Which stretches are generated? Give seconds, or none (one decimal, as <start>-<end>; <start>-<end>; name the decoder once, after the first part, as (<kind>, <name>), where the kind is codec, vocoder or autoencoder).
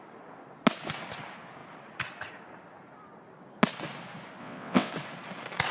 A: 4.4-4.9 (vocoder, WaveNeXt)